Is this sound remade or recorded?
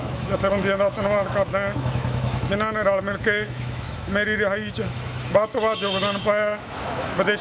remade